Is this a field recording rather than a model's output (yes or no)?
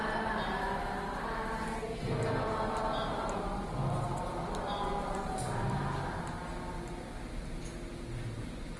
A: yes